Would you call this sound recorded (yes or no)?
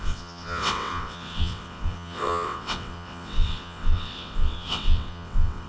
no